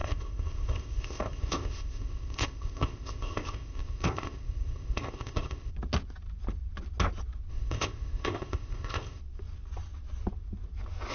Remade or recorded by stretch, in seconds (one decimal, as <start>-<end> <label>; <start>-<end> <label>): 0.0-5.7 remade; 5.7-7.5 recorded; 7.5-9.2 remade; 9.2-11.1 recorded